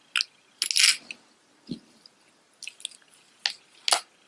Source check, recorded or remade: recorded